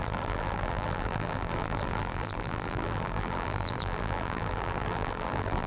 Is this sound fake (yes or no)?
yes